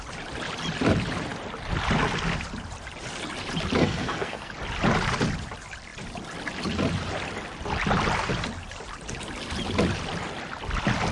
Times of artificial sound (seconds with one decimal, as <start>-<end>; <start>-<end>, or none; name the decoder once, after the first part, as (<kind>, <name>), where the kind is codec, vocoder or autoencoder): 3.8-4.5 (codec, SNAC)

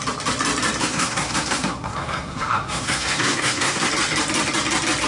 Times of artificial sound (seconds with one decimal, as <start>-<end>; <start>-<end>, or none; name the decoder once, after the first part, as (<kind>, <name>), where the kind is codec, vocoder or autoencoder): 0.8-3.9 (codec, SNAC)

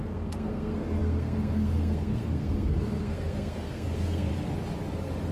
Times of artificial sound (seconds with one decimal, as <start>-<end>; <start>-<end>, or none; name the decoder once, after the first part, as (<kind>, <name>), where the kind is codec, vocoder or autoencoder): 0.0-4.3 (codec, SNAC)